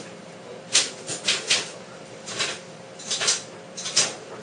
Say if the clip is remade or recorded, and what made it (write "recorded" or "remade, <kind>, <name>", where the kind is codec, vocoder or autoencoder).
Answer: recorded